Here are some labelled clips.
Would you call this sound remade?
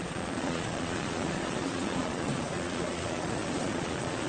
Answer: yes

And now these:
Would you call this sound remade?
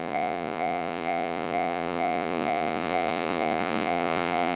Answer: yes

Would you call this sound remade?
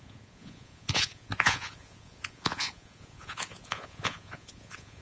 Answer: yes